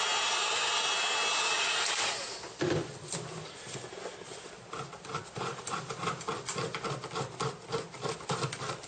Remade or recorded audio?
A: recorded